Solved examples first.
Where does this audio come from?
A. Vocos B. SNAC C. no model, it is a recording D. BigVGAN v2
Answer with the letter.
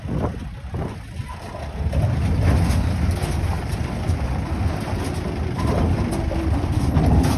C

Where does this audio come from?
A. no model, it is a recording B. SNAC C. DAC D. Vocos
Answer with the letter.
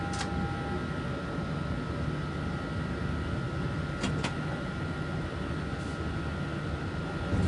A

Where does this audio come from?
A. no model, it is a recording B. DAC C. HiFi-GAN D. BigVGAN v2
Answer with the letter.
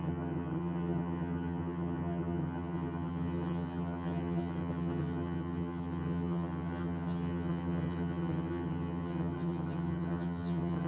C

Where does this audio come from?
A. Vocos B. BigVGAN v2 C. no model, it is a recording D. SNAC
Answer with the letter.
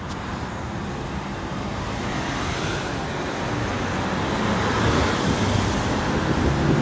C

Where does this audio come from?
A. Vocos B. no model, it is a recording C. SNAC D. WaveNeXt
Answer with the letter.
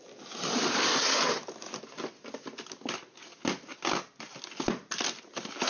B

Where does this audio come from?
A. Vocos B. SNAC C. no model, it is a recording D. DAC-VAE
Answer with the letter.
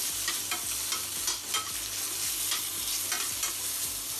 C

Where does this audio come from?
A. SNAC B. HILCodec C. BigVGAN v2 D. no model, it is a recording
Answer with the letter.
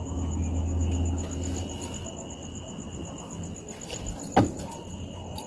D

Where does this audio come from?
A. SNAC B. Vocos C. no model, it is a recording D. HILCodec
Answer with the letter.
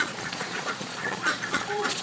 B